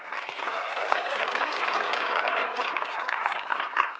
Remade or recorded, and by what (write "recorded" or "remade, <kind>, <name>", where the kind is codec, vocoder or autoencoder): remade, codec, SNAC